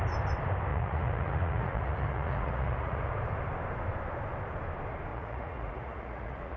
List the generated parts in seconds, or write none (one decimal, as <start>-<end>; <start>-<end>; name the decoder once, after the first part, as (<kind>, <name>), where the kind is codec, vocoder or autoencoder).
0.7-3.1 (vocoder, Vocos); 5.1-6.6